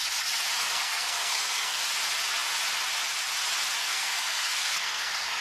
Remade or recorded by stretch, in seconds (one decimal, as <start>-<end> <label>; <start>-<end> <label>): 0.0-0.6 recorded; 0.6-1.8 remade; 1.8-3.8 recorded; 3.8-5.4 remade